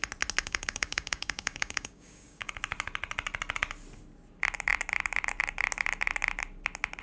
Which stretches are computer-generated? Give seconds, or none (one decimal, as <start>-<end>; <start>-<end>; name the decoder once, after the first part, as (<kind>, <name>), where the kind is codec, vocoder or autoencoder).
0.4-2.5 (codec, DAC)